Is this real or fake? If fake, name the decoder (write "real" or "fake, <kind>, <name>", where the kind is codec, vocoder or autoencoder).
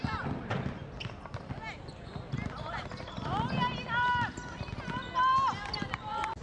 real